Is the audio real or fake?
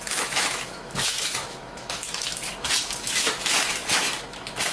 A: fake